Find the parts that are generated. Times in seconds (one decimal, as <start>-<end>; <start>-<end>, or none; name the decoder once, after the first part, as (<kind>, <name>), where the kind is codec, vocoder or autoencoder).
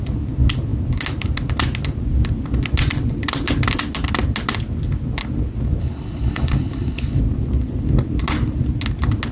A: 5.8-7.2 (codec, HILCodec)